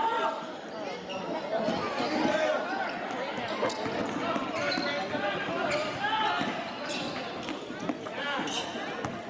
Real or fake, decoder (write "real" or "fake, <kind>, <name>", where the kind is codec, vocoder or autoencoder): real